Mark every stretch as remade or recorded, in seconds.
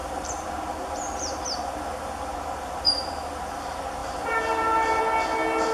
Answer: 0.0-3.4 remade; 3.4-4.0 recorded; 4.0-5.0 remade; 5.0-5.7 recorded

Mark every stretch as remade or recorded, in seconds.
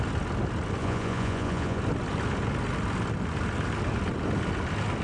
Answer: 0.0-0.8 recorded; 0.8-1.8 remade; 1.8-5.0 recorded